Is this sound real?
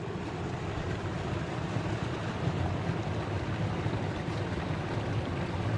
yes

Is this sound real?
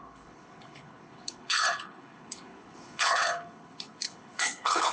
no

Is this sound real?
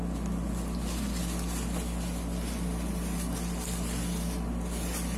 yes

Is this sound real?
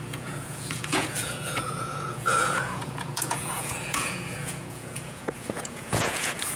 no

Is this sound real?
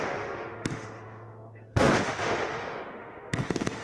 no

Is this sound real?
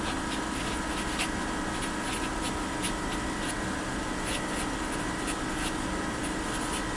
yes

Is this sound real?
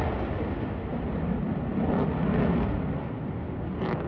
yes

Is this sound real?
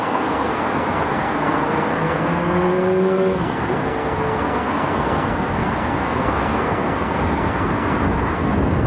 no